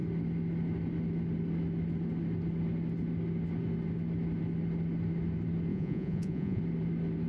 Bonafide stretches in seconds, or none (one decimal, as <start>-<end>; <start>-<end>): 0.0-5.7; 6.6-7.3